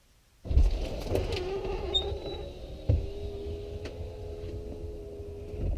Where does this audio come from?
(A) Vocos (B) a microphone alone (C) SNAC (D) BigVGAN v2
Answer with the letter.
B